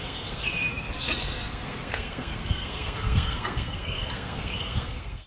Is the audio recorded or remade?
remade